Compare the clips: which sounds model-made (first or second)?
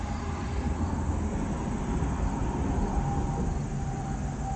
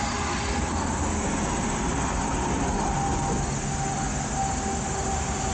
first